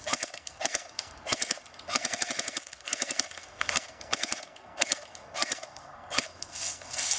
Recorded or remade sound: remade